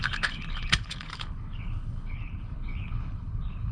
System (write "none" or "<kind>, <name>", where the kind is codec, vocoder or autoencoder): codec, HILCodec